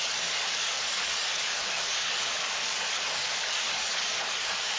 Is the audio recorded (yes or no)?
no